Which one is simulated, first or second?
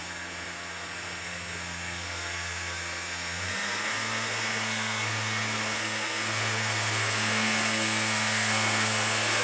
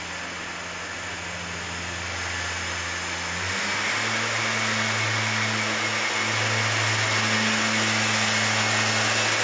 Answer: first